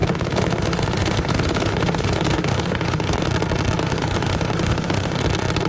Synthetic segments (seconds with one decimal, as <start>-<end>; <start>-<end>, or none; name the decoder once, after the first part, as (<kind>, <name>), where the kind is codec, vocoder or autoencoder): 0.0-3.3 (autoencoder, DAC-VAE); 3.8-5.2